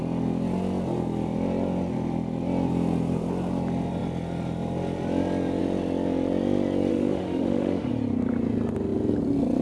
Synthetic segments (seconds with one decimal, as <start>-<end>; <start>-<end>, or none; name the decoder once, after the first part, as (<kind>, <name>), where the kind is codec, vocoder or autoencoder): 6.9-7.9 (autoencoder, DAC-VAE)